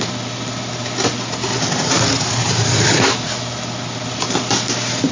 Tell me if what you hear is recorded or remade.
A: recorded